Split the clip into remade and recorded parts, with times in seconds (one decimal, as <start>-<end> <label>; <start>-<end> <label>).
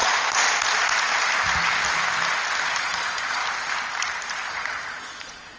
0.0-2.8 recorded; 2.8-3.4 remade; 3.4-4.5 recorded; 4.5-5.6 remade